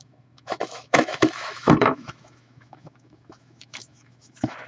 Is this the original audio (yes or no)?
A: no